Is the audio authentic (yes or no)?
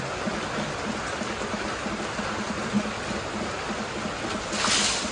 yes